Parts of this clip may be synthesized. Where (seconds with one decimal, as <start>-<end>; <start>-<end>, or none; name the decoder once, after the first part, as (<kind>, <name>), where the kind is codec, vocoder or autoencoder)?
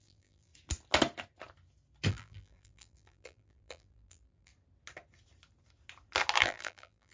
0.0-0.5 (vocoder, BigVGAN v2); 2.1-4.5; 6.4-7.1